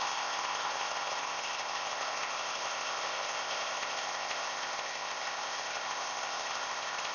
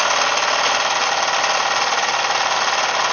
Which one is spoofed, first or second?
first